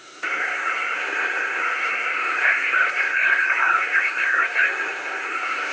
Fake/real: fake